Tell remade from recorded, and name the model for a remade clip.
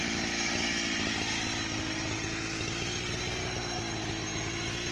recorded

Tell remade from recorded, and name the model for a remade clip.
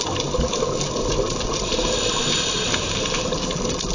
recorded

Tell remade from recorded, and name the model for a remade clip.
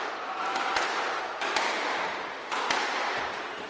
remade, vocoder, BigVGAN v2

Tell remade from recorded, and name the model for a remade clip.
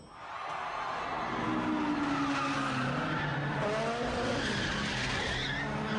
recorded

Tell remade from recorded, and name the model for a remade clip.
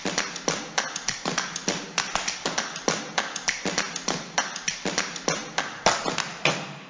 recorded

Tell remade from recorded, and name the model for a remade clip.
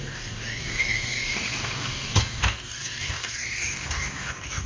remade, codec, DAC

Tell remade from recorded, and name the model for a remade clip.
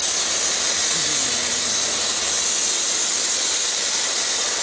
recorded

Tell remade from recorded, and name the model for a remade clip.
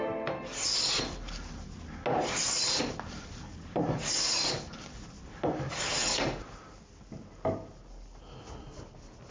recorded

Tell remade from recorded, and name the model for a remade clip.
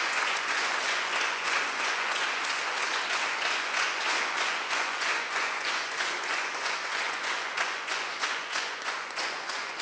remade, vocoder, Vocos